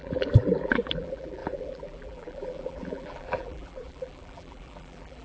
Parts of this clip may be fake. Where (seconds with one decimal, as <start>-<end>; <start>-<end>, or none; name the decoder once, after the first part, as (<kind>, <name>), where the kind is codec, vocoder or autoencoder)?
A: 0.0-5.2 (vocoder, BigVGAN v2)